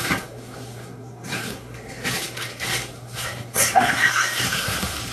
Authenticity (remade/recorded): remade